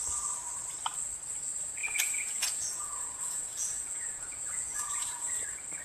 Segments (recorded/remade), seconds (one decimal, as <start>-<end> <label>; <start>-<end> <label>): 0.0-1.8 recorded; 1.8-5.3 remade; 5.3-5.8 recorded